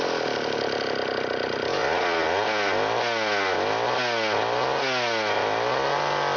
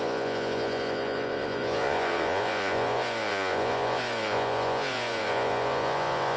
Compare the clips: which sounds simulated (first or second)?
second